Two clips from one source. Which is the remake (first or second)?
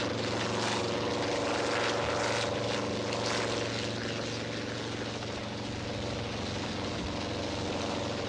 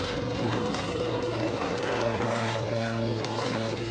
second